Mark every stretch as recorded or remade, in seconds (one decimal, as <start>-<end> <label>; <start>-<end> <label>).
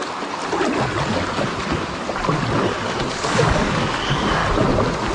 0.0-3.1 recorded; 3.1-4.4 remade; 4.4-5.1 recorded